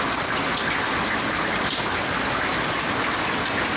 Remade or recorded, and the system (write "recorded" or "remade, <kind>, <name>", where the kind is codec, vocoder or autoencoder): recorded